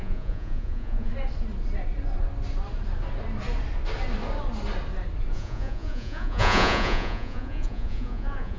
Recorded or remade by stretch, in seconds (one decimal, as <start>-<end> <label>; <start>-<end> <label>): 0.0-1.1 remade; 1.1-5.3 recorded; 5.3-8.6 remade